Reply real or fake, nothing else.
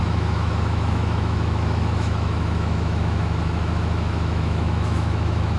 fake